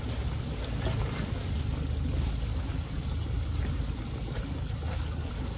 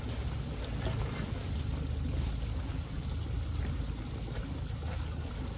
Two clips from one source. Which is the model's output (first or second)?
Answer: first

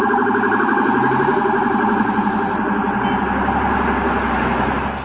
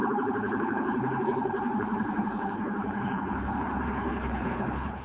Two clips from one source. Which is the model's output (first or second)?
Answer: second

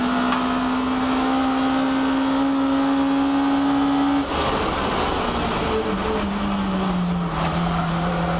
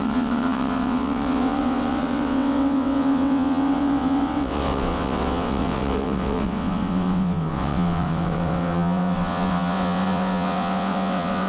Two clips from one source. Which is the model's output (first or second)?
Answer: second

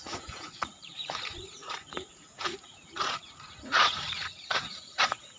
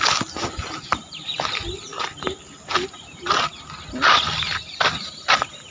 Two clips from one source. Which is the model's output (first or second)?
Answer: first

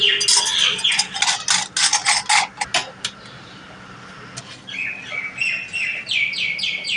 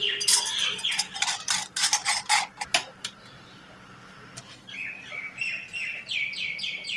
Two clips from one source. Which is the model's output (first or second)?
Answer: second